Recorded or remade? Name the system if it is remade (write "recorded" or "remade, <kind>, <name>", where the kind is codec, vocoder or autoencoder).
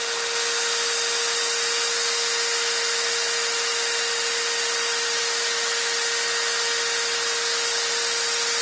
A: recorded